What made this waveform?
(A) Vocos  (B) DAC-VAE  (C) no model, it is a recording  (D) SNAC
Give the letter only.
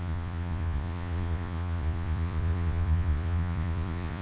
A